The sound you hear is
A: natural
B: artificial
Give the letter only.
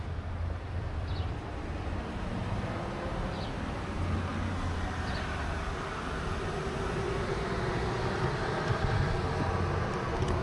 A